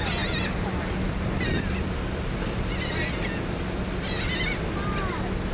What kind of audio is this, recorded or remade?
recorded